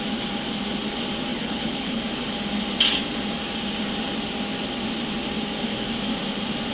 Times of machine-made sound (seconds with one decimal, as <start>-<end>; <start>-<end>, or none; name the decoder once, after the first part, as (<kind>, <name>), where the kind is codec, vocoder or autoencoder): 1.3-2.0 (codec, HILCodec)